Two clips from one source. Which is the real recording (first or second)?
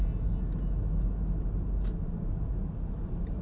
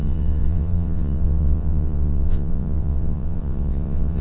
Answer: first